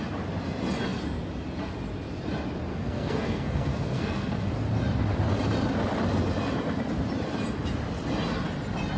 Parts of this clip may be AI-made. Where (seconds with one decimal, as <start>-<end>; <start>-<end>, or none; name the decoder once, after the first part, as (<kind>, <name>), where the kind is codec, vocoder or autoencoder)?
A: 2.7-4.5 (codec, SNAC)